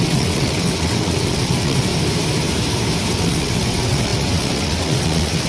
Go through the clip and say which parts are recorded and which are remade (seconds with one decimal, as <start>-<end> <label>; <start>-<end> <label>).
0.0-1.9 remade; 1.9-3.1 recorded; 3.1-5.5 remade